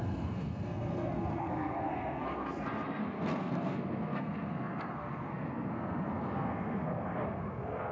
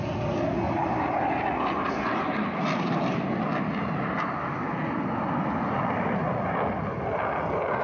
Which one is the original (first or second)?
second